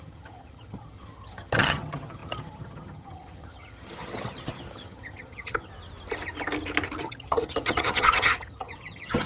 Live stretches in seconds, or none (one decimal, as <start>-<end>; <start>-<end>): 5.7-7.0

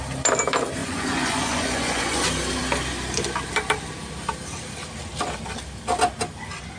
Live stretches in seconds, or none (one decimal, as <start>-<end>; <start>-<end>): 0.0-0.8; 2.2-6.8

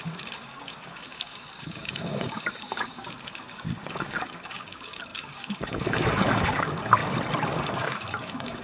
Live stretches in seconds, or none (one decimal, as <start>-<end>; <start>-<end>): 7.0-7.5

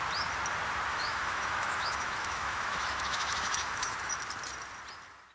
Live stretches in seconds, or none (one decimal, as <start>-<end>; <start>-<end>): 0.0-0.9; 4.1-5.3

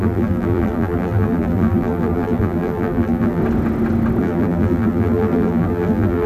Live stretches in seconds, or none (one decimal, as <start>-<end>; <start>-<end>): 3.4-4.2

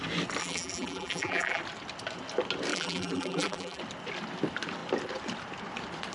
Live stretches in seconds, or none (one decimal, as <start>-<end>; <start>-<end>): 0.0-0.4; 1.6-2.7; 3.8-6.1

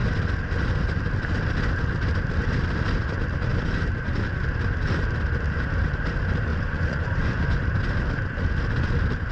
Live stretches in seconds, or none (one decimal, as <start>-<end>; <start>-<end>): 0.0-6.5; 7.6-9.3

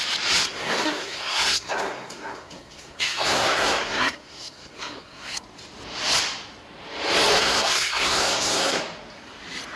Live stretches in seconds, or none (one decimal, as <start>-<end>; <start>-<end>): 0.0-0.4; 5.4-7.4; 8.8-9.8